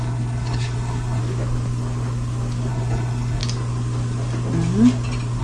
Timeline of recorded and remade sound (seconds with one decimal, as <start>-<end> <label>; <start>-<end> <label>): 0.0-1.2 remade; 1.2-2.7 recorded; 2.7-3.4 remade; 3.4-5.4 recorded

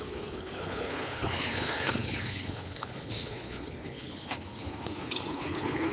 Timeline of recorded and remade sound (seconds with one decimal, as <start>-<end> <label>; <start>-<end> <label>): 0.0-5.9 remade